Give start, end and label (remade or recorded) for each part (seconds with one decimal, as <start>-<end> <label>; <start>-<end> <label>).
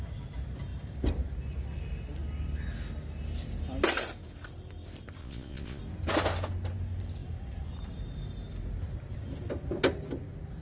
0.0-5.2 recorded; 5.2-5.8 remade; 5.8-10.6 recorded